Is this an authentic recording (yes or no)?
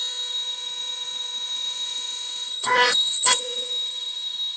no